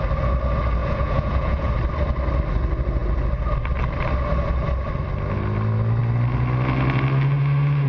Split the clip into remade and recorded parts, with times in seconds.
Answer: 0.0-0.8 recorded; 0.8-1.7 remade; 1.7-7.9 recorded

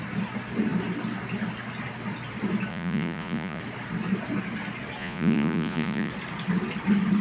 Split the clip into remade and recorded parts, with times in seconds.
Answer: 0.0-2.7 recorded; 2.7-3.6 remade; 3.6-5.0 recorded; 5.0-6.1 remade; 6.1-7.2 recorded

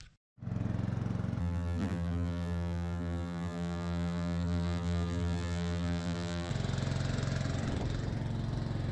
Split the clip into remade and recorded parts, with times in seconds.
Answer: 0.0-1.4 recorded; 1.4-6.5 remade; 6.5-8.9 recorded

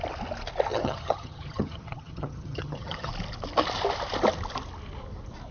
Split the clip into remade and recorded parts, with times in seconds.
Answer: 0.0-0.7 recorded; 0.7-3.1 remade; 3.1-5.5 recorded

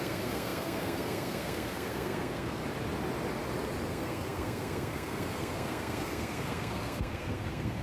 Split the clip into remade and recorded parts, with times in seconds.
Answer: 0.0-2.6 remade; 2.6-3.9 recorded; 3.9-7.8 remade